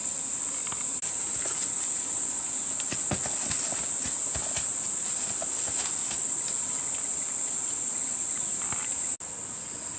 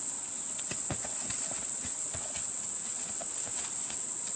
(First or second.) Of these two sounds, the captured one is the first